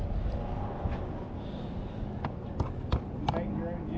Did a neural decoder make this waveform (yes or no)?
no